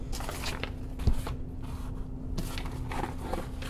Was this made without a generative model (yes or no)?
yes